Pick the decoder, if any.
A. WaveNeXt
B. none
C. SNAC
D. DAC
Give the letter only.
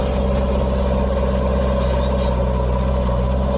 B